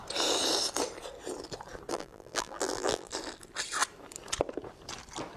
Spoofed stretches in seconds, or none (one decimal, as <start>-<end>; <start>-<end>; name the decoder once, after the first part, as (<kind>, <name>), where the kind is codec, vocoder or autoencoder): 1.9-3.1 (vocoder, BigVGAN v2)